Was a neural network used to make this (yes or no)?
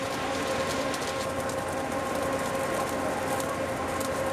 no